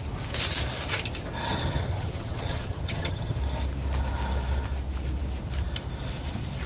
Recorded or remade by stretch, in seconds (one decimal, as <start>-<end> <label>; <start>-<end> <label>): 0.0-1.5 recorded; 1.5-3.4 remade; 3.4-6.7 recorded